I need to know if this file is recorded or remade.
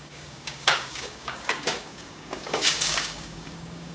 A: remade